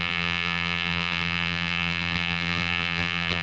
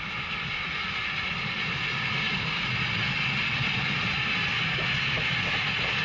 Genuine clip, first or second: second